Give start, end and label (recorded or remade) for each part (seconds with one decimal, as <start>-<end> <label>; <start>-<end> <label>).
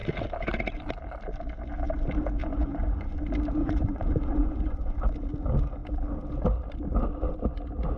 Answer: 0.0-2.4 recorded; 2.4-3.2 remade; 3.2-3.6 recorded; 3.6-5.0 remade; 5.0-8.0 recorded